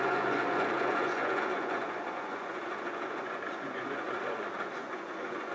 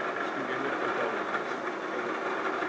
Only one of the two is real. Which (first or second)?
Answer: second